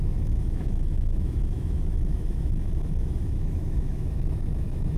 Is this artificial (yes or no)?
yes